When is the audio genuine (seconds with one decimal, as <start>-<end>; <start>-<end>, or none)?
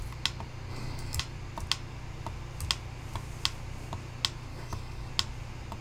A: 0.0-0.7; 1.2-4.5; 5.1-5.8